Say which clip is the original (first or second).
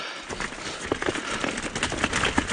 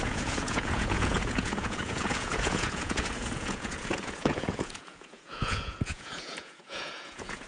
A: first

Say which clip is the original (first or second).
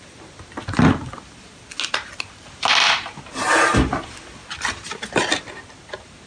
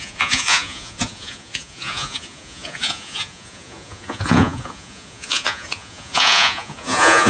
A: first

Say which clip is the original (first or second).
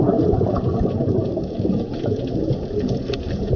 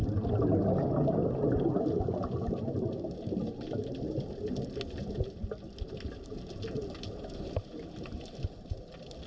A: second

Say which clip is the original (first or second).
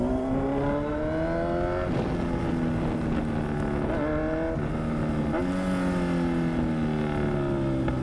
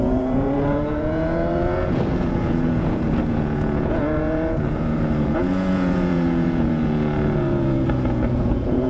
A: first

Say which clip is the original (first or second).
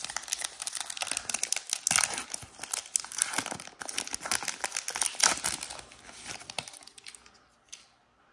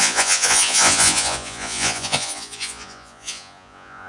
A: first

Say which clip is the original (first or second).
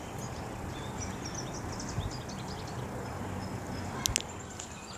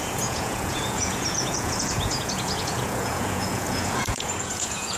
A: first